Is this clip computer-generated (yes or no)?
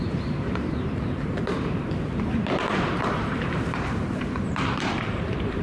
yes